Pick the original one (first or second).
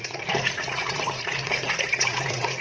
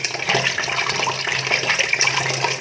second